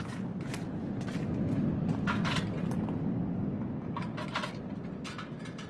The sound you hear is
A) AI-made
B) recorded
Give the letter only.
B